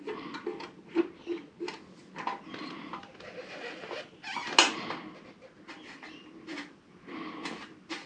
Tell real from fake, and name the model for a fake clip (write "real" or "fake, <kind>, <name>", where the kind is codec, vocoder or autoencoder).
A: real